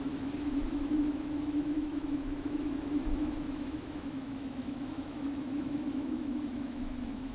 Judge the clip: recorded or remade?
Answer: remade